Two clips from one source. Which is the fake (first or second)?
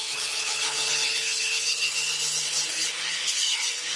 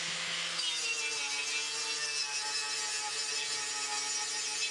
first